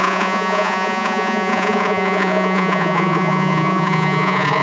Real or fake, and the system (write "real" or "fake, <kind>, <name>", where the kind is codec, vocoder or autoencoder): fake, vocoder, Vocos